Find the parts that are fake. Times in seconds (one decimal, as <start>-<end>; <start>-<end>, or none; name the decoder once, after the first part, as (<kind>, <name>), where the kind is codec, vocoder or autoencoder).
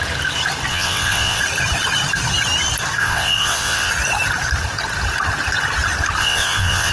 0.7-1.4 (vocoder, WaveNeXt); 3.0-3.9; 6.2-6.9